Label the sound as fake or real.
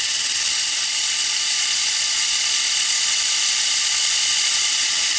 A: fake